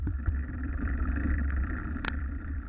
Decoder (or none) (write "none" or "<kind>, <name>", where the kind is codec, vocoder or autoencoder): vocoder, BigVGAN v2